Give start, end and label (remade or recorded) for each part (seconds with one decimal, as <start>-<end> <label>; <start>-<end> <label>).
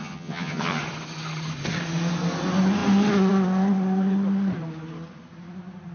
0.0-0.8 remade; 0.8-5.9 recorded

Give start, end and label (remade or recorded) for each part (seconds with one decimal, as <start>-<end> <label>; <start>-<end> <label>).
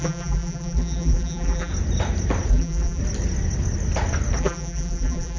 0.0-1.7 remade; 1.7-2.5 recorded; 2.5-3.0 remade; 3.0-4.4 recorded; 4.4-5.4 remade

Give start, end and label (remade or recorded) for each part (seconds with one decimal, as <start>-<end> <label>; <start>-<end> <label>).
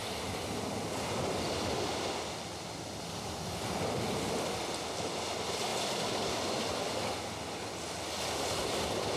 0.0-9.2 recorded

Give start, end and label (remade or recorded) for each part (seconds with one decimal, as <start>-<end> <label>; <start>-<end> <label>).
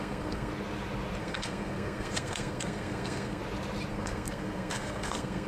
0.0-0.5 remade; 0.5-1.2 recorded; 1.2-3.4 remade; 3.4-3.9 recorded; 3.9-5.5 remade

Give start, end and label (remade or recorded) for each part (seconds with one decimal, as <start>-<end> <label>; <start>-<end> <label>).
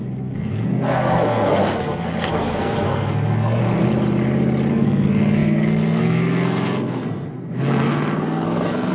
0.0-3.6 remade; 3.6-4.7 recorded; 4.7-8.9 remade